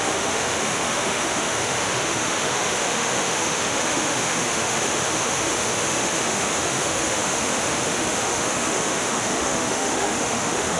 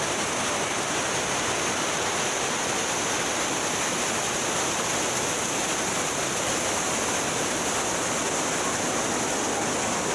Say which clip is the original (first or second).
second